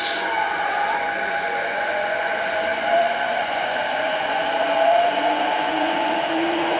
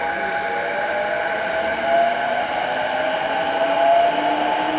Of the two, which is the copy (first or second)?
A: first